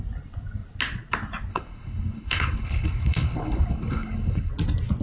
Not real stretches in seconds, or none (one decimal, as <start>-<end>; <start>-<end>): 1.5-4.5